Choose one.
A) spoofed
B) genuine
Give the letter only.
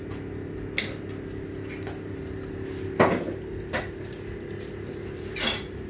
B